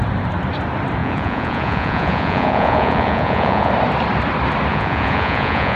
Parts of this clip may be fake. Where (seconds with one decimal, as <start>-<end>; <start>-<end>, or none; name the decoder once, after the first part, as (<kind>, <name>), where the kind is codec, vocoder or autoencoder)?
1.0-3.7 (vocoder, Vocos); 4.7-5.8